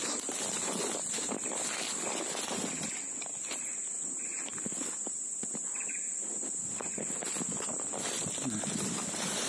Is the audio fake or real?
real